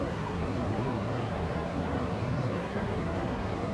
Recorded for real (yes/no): no